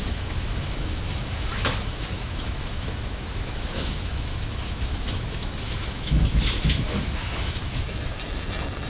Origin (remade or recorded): remade